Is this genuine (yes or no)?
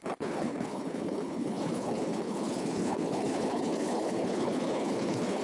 no